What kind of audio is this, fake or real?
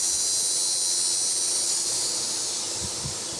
real